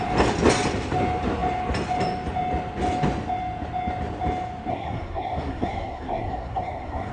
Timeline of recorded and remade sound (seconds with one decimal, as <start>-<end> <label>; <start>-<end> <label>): 0.0-4.7 recorded; 4.7-7.1 remade